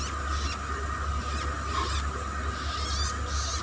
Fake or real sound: real